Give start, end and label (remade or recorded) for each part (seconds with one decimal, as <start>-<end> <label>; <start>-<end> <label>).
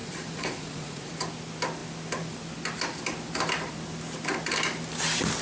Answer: 0.0-1.2 remade; 1.2-5.4 recorded